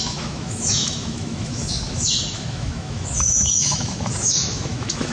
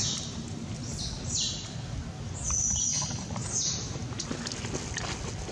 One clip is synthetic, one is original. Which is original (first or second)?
second